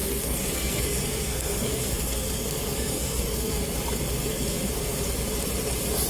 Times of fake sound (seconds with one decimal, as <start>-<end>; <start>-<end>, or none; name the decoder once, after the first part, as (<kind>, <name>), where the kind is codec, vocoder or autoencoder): 0.0-3.7 (codec, SNAC); 4.2-5.0